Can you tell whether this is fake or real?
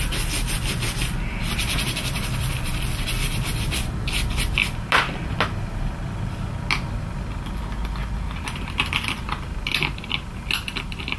real